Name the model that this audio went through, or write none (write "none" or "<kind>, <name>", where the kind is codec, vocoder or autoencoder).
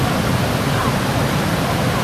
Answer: none